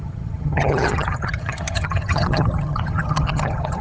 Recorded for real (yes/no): no